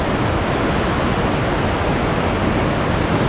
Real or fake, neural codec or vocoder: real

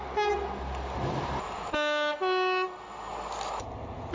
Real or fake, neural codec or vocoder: real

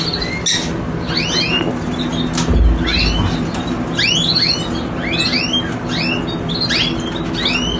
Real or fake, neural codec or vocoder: real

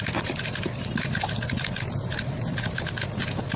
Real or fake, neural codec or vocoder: real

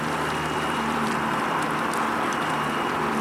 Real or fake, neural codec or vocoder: fake, vocoder, BigVGAN v2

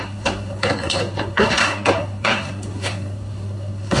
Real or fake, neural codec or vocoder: fake, codec, SNAC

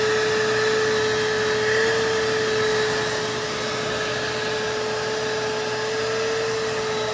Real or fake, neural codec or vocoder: real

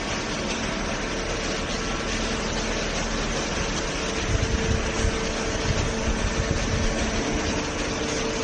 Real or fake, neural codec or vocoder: real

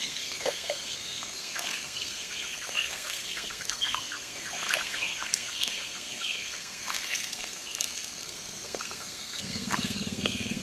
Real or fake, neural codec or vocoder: fake, codec, SNAC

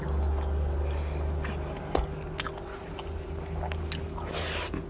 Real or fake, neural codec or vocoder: real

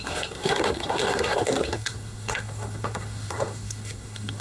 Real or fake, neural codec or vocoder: fake, codec, SNAC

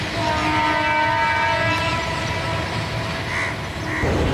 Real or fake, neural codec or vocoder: real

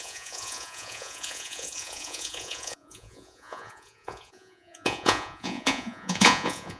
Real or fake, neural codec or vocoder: fake, vocoder, Vocos